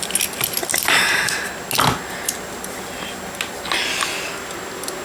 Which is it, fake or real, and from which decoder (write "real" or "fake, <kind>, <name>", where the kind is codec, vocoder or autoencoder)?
real